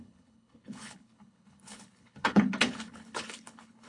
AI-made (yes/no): yes